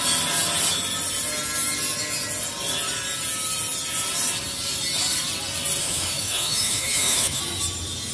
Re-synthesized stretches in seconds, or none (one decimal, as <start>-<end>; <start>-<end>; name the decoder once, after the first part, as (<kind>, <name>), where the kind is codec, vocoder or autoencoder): 5.8-7.4 (autoencoder, DAC-VAE)